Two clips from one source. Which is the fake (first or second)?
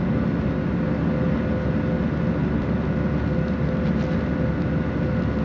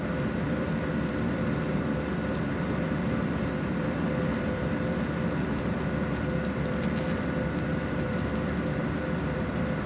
second